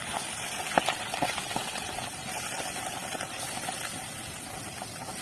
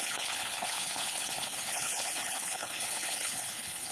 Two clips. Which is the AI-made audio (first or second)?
second